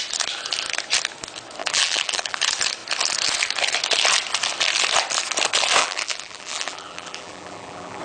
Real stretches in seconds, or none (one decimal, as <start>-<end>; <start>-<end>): 0.0-1.6; 2.4-5.8